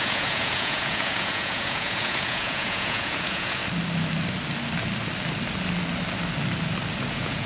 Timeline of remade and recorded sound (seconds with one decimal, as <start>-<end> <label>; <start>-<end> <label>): 0.0-3.6 remade; 3.6-7.1 recorded; 7.1-7.5 remade